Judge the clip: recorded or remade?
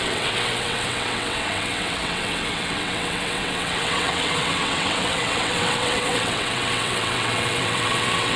remade